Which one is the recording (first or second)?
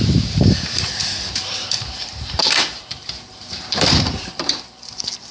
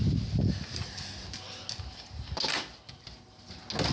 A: second